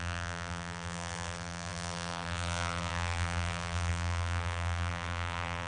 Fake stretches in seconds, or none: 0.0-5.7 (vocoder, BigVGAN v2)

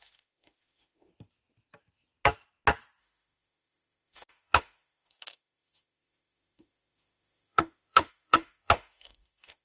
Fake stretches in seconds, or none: 0.0-1.1 (autoencoder, DAC-VAE); 3.0-9.6

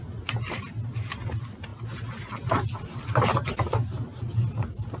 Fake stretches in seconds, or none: none

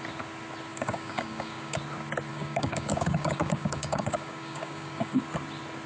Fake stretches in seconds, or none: 0.7-1.8 (codec, DAC); 2.3-5.2